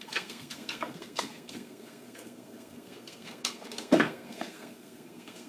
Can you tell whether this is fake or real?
fake